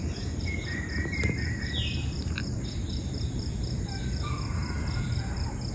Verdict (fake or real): fake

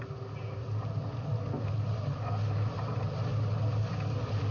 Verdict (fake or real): real